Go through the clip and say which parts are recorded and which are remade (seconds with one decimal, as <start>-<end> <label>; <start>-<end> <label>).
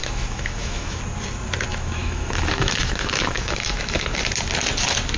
0.0-1.0 remade; 1.0-1.7 recorded; 1.7-4.2 remade; 4.2-5.2 recorded